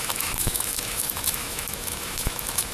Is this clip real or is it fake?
fake